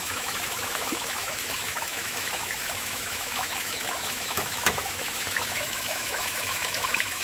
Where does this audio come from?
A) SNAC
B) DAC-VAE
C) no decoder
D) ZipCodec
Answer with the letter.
B